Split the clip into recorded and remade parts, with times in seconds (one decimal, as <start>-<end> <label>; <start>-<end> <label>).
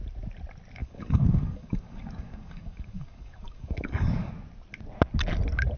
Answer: 0.0-0.8 recorded; 0.8-4.3 remade; 4.3-5.8 recorded